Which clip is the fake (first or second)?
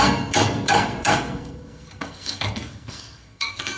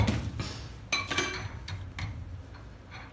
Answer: first